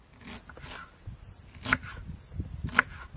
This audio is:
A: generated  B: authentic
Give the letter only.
B